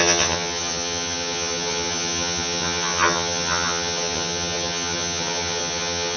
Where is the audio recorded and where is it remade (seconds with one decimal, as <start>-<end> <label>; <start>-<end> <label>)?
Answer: 0.0-6.2 remade